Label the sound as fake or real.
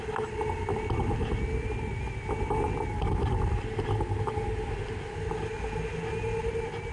real